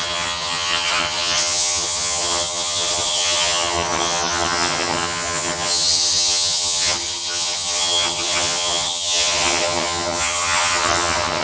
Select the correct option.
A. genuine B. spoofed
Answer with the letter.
B